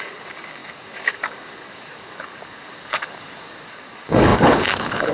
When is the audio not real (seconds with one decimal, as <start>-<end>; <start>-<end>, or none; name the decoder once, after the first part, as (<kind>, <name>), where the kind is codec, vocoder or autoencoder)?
0.0-5.1 (codec, DAC)